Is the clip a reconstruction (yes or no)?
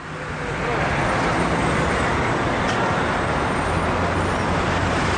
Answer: no